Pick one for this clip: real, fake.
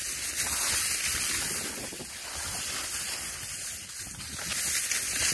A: real